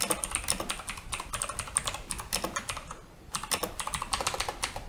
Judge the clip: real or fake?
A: real